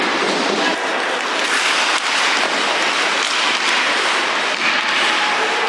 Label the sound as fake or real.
real